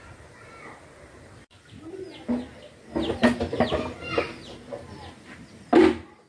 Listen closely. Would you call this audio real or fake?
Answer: real